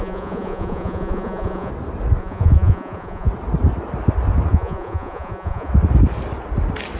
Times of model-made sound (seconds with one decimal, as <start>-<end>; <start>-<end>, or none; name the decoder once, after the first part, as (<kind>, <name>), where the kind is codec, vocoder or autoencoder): 0.0-1.7 (vocoder, Vocos); 2.2-3.3; 4.5-5.7